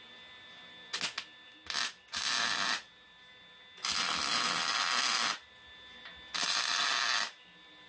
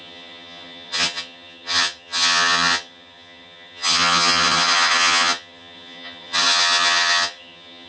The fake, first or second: second